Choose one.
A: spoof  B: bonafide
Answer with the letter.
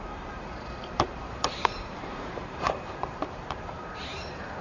A